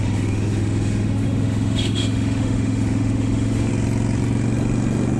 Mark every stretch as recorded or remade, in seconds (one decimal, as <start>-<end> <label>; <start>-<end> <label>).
0.0-3.7 remade; 3.7-5.2 recorded